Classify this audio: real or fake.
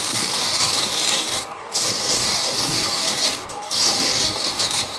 fake